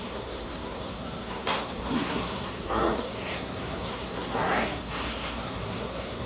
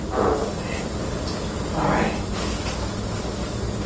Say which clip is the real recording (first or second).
second